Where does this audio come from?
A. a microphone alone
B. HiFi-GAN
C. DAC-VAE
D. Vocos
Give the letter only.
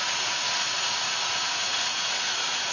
D